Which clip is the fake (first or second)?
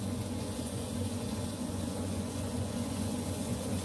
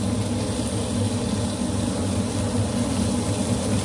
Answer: first